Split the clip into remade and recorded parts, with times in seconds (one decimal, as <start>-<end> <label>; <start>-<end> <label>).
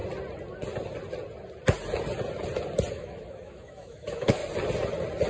0.0-2.9 recorded; 2.9-4.4 remade; 4.4-5.3 recorded